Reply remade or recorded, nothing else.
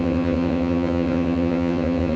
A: remade